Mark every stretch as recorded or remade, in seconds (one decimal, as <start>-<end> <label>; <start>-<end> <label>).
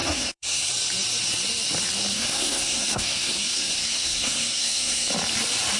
0.0-0.7 remade; 0.7-2.1 recorded; 2.1-5.1 remade; 5.1-5.8 recorded